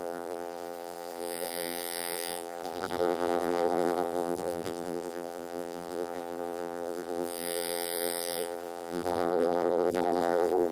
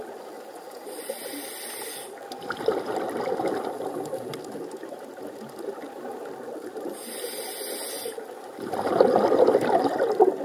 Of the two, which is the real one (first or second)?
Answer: second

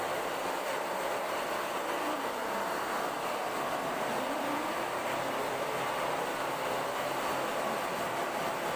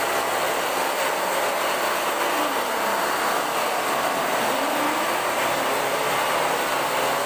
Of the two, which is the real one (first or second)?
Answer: second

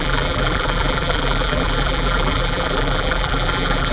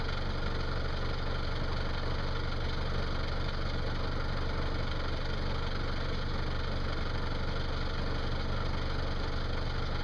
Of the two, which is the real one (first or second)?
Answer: second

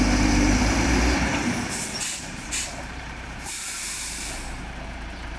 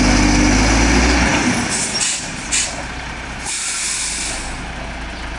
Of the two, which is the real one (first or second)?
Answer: second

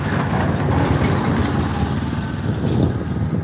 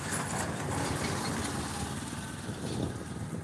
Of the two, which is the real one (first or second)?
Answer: first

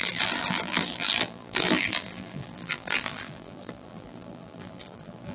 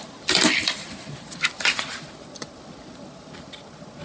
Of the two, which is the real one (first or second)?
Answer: second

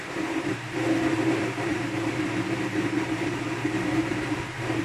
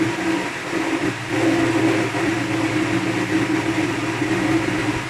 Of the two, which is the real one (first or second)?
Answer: second